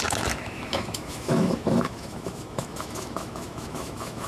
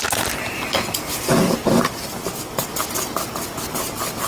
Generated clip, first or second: first